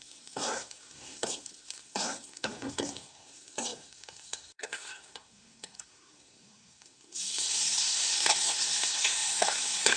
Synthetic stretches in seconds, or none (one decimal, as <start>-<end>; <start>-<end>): 0.0-10.0